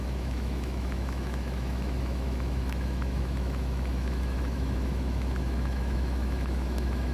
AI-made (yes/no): yes